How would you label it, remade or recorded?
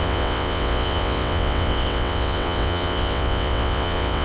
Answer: remade